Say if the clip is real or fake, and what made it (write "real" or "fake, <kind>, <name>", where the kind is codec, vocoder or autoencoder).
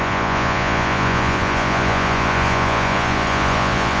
fake, vocoder, Vocos